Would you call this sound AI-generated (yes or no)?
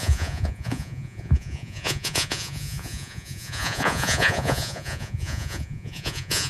yes